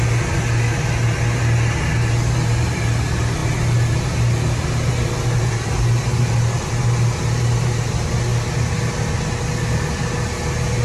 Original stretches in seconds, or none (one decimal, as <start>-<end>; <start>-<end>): 0.0-10.8